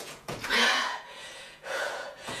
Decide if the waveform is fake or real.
fake